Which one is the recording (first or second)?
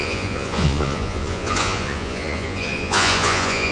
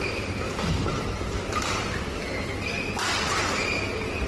second